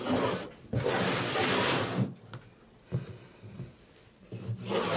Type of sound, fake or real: real